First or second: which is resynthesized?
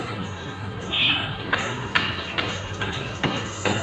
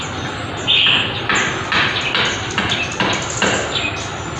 first